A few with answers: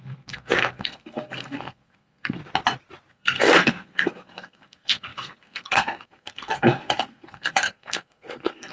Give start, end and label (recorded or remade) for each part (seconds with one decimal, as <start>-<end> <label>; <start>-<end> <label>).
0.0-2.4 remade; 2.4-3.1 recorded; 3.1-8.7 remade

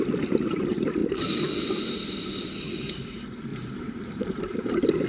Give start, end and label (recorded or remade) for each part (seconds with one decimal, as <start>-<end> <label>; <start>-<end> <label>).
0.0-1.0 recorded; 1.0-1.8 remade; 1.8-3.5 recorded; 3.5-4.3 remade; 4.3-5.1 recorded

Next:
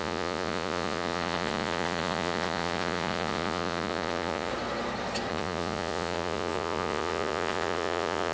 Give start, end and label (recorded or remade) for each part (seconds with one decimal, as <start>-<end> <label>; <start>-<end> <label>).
0.0-4.5 remade; 4.5-5.3 recorded; 5.3-8.3 remade

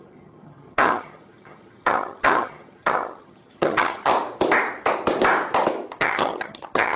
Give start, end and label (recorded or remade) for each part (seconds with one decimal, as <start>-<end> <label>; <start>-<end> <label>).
0.0-4.1 remade; 4.1-6.0 recorded; 6.0-7.0 remade

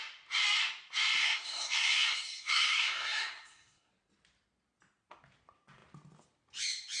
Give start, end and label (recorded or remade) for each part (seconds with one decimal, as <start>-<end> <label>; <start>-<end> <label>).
0.0-1.2 recorded; 1.2-3.9 remade; 3.9-7.0 recorded